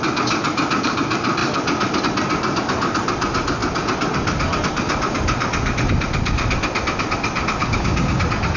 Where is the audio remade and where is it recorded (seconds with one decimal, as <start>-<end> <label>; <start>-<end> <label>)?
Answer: 0.0-7.6 recorded; 7.6-8.2 remade; 8.2-8.6 recorded